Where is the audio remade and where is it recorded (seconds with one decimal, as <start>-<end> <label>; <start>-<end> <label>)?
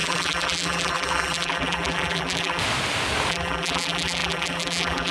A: 0.0-2.6 remade; 2.6-3.3 recorded; 3.3-5.1 remade